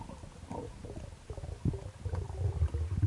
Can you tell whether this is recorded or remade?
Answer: recorded